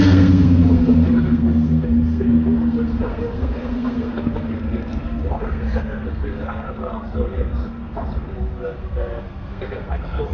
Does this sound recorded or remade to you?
remade